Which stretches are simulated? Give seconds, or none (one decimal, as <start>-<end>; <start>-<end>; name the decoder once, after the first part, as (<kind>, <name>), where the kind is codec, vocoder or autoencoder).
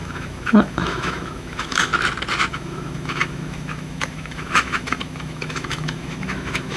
0.0-1.9 (autoencoder, DAC-VAE); 2.5-6.8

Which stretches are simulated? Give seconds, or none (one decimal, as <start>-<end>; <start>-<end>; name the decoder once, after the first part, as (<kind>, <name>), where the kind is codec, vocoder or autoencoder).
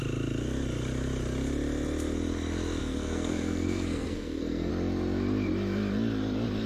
2.8-4.7 (codec, SNAC)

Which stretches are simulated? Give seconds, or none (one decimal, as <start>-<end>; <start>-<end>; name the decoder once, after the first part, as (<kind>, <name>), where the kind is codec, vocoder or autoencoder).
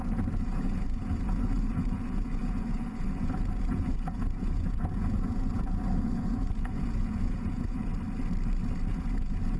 0.0-7.9 (vocoder, Vocos); 8.9-9.6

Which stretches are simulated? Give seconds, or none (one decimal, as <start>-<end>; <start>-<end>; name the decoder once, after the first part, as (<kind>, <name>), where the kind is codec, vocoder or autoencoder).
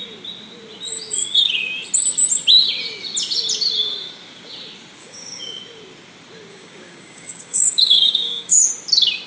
5.0-5.6 (codec, DAC); 6.5-8.7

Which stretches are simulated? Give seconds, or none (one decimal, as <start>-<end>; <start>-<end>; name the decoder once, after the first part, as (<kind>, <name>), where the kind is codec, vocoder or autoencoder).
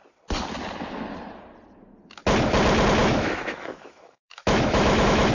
3.0-5.3 (autoencoder, DAC-VAE)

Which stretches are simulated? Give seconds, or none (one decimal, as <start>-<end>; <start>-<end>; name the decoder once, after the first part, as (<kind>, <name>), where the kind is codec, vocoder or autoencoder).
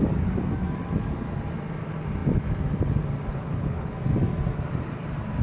3.3-3.9 (codec, HILCodec)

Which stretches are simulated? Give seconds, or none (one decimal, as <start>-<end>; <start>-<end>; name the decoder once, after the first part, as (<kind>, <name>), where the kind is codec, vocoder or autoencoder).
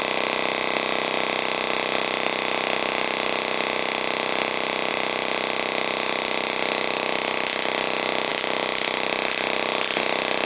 0.0-10.5 (vocoder, BigVGAN v2)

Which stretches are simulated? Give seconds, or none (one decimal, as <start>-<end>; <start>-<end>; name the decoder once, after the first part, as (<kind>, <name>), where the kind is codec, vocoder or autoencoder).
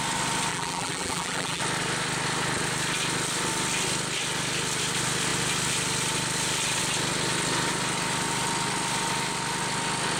0.5-1.6 (vocoder, BigVGAN v2)